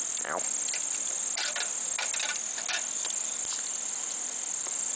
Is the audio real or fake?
real